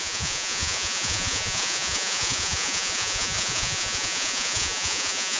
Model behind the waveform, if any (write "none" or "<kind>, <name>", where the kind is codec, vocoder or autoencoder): vocoder, Vocos